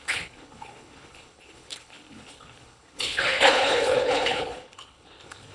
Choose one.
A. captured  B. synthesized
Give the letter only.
B